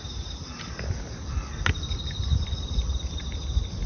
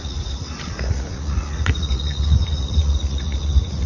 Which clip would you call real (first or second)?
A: first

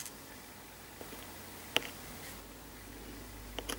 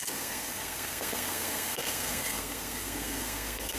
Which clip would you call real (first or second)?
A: first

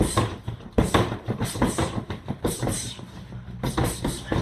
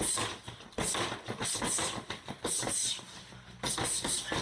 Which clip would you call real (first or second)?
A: second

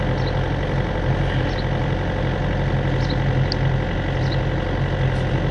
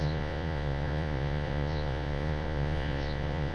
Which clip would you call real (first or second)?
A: first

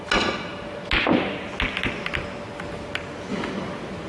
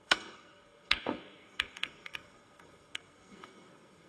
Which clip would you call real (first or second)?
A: first